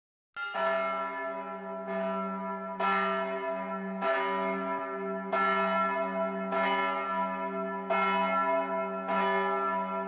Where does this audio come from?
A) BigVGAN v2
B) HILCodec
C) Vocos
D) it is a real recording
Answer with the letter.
D